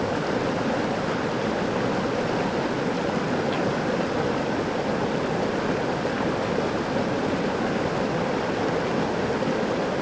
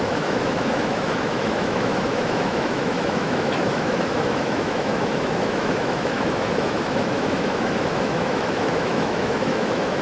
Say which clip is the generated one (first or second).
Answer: second